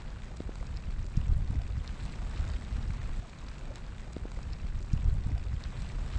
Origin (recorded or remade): recorded